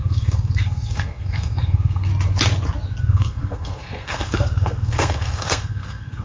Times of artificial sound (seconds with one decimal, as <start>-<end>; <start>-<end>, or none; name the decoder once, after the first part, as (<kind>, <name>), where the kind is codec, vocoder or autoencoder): 0.0-2.1 (codec, SNAC); 3.0-6.2